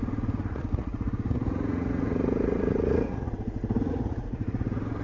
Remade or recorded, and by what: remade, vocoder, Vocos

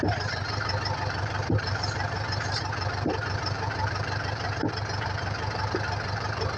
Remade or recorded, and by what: remade, vocoder, BigVGAN v2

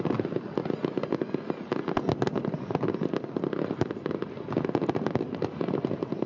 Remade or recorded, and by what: recorded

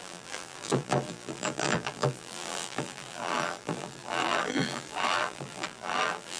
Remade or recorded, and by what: remade, vocoder, BigVGAN v2